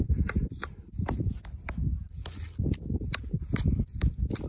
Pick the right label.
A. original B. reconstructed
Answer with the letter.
A